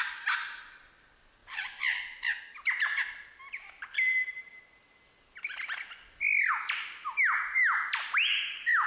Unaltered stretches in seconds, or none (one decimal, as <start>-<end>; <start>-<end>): 0.0-8.9